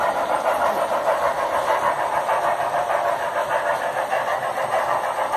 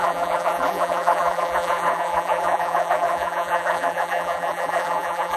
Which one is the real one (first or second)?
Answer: first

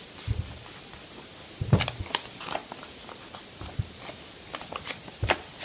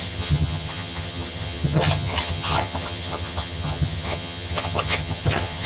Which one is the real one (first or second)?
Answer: first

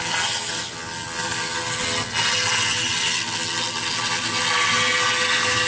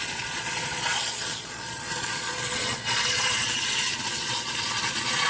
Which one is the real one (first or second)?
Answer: first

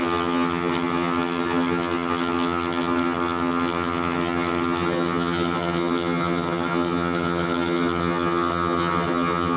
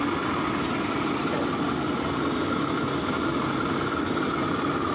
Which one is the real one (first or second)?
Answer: second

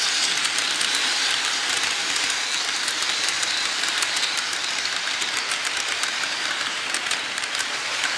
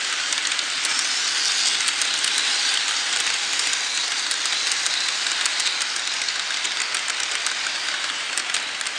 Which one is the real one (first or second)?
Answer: second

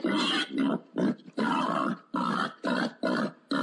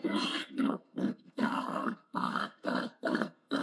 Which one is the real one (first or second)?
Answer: first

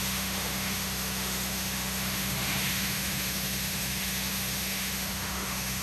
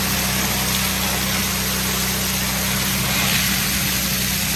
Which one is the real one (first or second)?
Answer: second